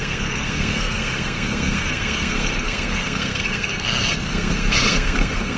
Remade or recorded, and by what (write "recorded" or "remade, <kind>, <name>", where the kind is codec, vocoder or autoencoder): remade, codec, SNAC